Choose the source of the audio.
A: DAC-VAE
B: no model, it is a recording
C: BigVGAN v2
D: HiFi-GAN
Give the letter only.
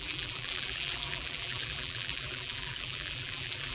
C